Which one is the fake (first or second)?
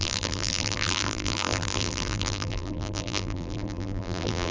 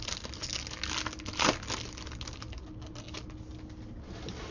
first